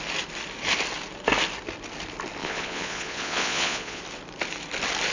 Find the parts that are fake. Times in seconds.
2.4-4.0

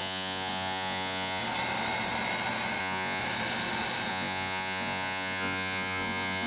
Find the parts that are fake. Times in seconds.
0.0-1.4; 2.8-3.2; 4.1-6.5